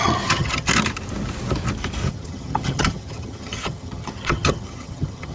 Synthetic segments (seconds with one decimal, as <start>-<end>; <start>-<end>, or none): 0.0-0.7; 2.1-5.3